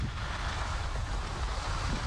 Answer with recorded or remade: recorded